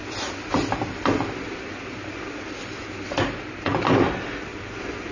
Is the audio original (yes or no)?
yes